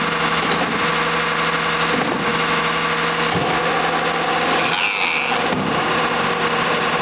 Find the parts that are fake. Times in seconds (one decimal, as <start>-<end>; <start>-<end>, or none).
none